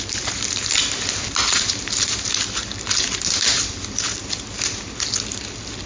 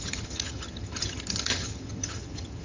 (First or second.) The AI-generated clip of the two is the second